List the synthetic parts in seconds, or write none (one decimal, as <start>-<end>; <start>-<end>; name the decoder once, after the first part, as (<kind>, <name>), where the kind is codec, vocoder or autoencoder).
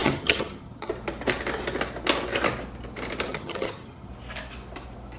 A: 0.0-0.9 (vocoder, HiFi-GAN); 3.3-4.1